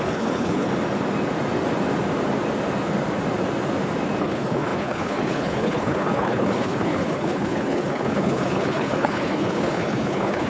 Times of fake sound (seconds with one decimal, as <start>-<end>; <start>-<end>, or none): 0.0-0.7; 4.2-10.5